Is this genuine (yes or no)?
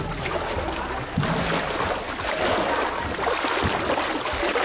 yes